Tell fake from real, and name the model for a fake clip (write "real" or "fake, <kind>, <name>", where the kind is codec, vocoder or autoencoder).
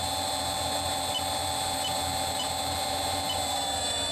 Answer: fake, vocoder, BigVGAN v2